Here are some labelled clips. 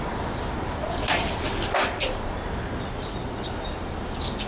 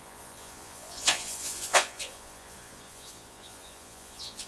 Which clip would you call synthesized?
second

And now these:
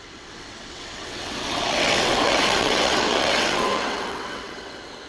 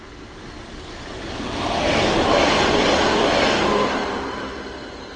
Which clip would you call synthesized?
first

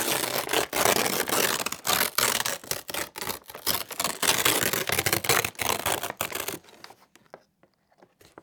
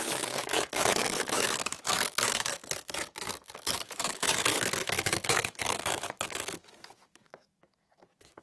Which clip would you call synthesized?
second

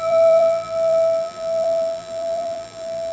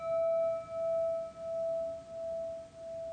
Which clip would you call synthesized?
first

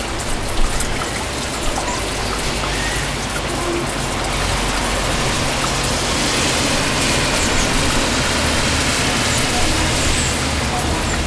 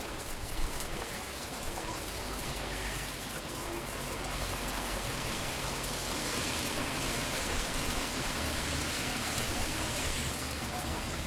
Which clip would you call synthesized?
second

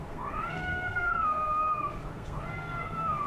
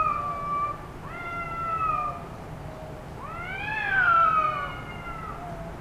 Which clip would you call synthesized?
first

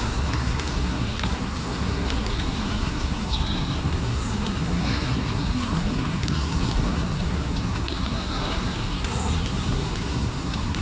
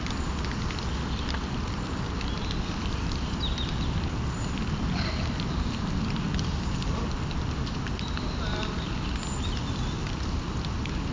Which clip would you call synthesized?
first